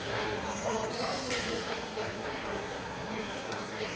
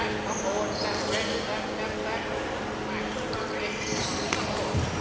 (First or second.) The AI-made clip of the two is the first